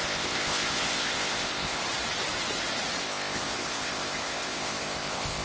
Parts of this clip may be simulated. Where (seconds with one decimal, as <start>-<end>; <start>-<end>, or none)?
0.0-1.8; 3.0-5.4